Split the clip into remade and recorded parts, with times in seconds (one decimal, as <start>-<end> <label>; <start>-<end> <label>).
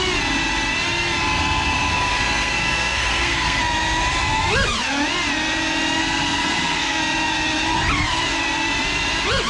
0.0-1.9 recorded; 1.9-3.6 remade; 3.6-6.0 recorded; 6.0-7.0 remade; 7.0-9.5 recorded